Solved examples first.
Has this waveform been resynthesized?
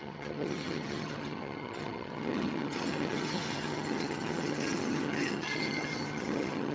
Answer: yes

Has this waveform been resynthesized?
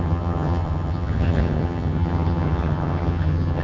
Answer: yes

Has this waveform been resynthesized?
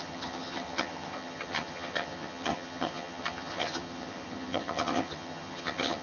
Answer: yes